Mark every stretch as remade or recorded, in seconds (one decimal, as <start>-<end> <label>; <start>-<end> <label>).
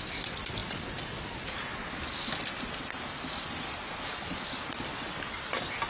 0.0-5.9 recorded